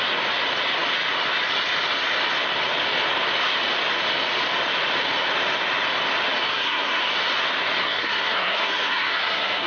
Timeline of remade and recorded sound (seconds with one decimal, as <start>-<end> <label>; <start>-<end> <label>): 0.0-6.5 recorded; 6.5-7.0 remade; 7.0-7.8 recorded; 7.8-9.7 remade